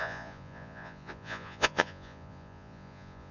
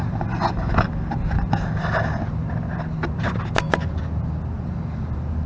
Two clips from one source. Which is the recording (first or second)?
second